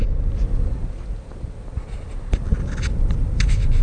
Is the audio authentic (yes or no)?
yes